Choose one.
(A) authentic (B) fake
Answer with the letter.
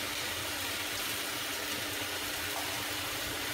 A